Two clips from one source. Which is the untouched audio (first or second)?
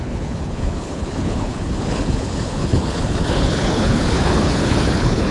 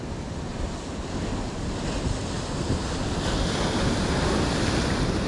second